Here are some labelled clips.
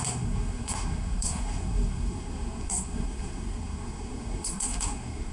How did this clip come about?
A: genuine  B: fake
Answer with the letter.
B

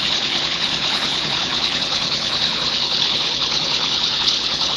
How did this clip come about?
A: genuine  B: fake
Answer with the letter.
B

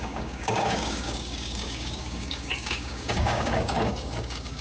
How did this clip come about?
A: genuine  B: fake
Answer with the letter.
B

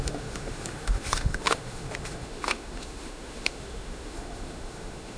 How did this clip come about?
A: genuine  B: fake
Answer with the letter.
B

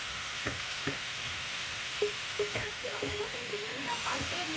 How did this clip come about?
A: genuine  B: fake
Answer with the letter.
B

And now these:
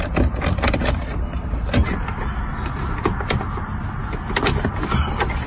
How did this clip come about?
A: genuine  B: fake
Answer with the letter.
A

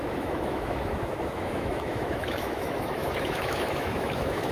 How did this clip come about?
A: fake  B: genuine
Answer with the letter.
A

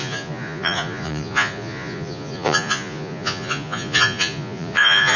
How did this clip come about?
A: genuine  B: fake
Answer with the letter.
B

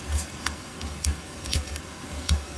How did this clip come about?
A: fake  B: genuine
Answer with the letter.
A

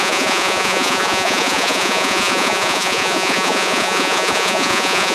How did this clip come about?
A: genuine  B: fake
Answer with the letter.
B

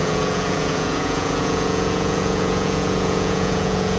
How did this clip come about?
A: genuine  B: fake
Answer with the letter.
B